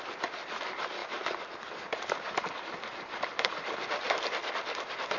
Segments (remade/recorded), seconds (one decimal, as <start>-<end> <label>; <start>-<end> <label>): 0.0-5.2 recorded